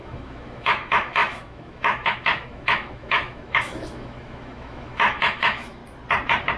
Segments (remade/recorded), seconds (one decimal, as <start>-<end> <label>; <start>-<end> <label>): 0.0-5.8 remade; 5.8-6.6 recorded